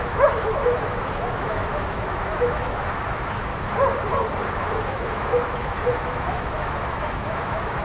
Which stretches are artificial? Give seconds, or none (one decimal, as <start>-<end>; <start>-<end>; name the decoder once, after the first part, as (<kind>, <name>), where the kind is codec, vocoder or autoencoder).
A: 0.0-3.5 (autoencoder, DAC-VAE); 4.6-7.8